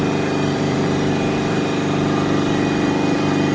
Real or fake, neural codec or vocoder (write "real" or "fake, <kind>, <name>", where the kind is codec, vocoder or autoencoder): fake, vocoder, BigVGAN v2